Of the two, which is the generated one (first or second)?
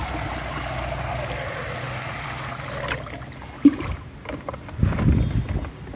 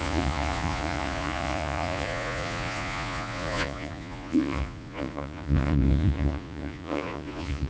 second